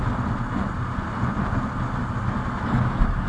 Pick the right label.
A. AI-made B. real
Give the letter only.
B